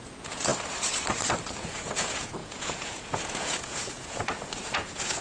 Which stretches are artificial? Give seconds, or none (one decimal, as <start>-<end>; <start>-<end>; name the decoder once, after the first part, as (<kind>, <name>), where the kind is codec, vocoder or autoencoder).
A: 0.0-0.5 (vocoder, Vocos); 1.6-5.2